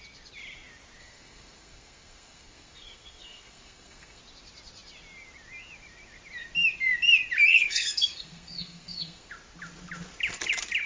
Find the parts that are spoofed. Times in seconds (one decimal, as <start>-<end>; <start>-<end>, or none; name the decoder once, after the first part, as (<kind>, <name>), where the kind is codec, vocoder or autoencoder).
1.0-4.2 (codec, SNAC); 7.5-9.3